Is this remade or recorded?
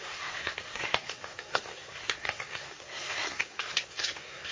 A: remade